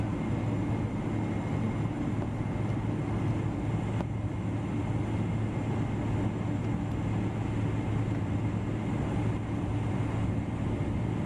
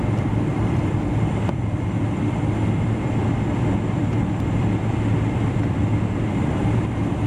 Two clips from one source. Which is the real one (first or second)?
first